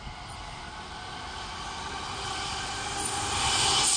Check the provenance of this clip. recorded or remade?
recorded